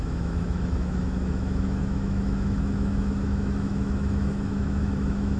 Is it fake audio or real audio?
fake